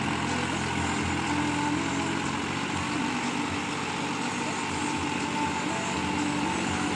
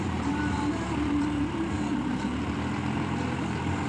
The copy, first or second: second